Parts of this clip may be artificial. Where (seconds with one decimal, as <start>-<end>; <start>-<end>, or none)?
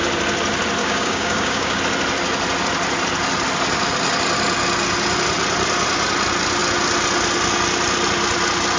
0.8-1.8